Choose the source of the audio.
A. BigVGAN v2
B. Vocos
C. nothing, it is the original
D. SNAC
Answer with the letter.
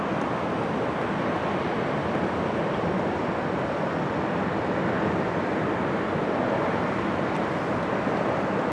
C